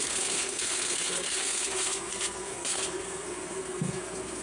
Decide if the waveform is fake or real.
fake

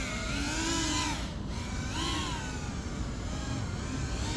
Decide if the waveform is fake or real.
real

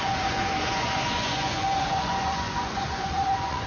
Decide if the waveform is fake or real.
fake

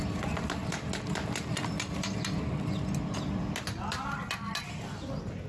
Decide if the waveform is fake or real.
real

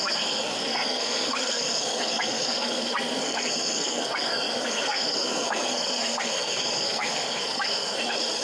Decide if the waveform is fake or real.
fake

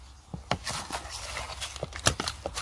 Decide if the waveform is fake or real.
real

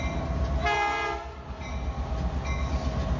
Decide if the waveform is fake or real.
real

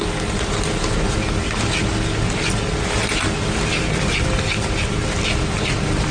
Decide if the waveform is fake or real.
real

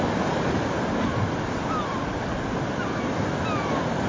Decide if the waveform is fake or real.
real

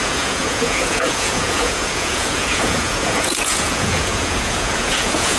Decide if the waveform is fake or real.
fake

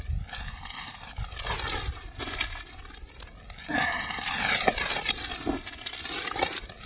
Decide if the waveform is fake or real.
real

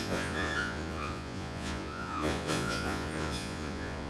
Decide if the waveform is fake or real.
fake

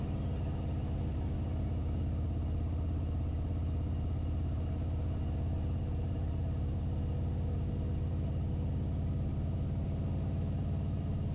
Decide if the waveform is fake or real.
real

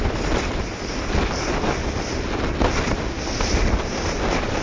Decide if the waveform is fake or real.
real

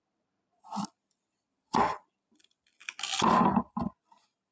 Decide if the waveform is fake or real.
real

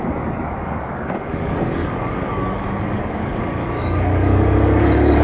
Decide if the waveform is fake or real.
fake